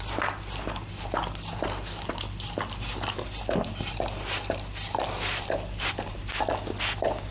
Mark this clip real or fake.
real